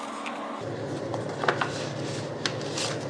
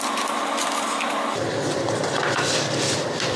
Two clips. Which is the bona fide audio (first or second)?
first